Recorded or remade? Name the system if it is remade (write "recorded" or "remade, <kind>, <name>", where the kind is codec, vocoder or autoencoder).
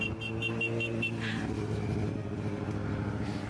recorded